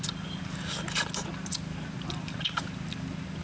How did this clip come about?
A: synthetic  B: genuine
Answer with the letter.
B